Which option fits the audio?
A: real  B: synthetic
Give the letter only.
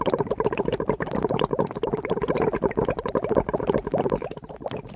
B